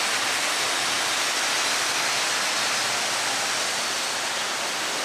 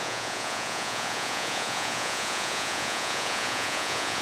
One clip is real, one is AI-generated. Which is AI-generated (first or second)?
second